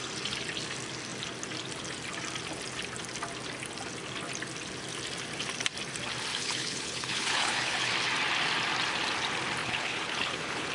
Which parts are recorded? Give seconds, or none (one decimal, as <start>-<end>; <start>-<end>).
0.0-6.3; 7.9-9.6